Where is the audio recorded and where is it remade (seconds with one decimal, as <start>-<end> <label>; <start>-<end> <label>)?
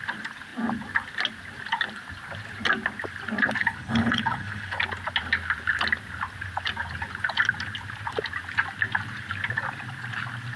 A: 0.0-3.6 recorded; 3.6-4.8 remade; 4.8-10.6 recorded